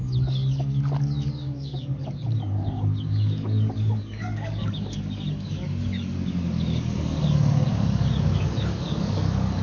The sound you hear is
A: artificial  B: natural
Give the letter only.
A